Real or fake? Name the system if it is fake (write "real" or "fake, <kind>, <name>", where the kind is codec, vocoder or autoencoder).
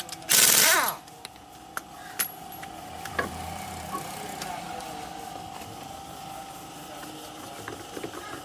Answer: real